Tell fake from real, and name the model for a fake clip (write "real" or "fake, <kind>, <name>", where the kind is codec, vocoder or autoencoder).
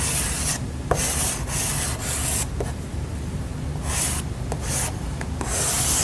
real